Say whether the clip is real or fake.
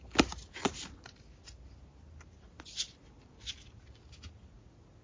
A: real